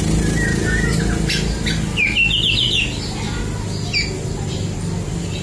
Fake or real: real